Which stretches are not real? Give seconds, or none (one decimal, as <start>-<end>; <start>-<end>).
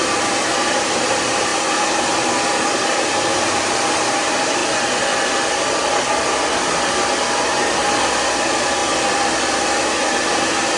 0.0-4.6; 8.4-8.8; 9.5-10.8